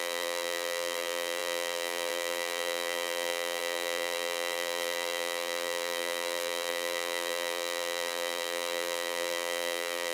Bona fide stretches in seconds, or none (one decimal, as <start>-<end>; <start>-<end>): none